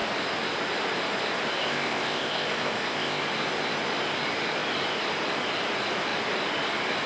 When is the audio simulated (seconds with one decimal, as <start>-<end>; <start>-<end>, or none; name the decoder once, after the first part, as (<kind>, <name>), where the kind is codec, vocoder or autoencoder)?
1.6-3.2 (codec, ZipCodec)